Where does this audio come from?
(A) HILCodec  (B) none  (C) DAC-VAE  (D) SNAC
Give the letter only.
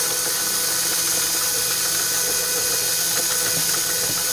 B